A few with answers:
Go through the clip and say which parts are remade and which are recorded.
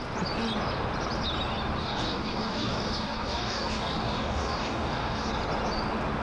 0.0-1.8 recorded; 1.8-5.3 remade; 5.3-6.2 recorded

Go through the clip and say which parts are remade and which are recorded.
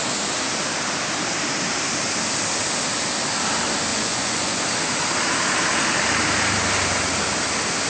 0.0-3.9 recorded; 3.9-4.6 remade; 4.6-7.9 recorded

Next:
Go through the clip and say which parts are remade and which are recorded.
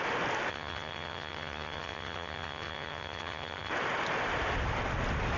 0.0-0.5 recorded; 0.5-3.7 remade; 3.7-5.4 recorded